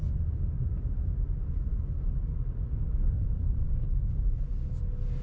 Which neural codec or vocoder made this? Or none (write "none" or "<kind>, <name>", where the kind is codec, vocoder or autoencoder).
vocoder, BigVGAN v2